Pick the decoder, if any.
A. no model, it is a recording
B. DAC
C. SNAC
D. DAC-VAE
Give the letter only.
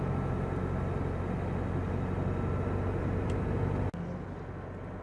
A